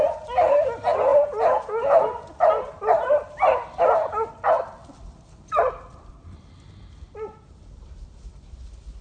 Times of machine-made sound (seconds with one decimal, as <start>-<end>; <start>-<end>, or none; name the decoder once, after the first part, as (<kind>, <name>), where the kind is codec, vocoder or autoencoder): none